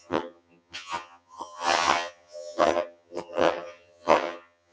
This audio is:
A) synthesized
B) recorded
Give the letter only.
A